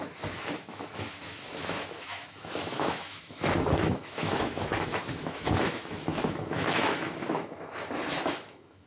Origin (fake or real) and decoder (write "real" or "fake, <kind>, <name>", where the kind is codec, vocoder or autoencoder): fake, autoencoder, DAC-VAE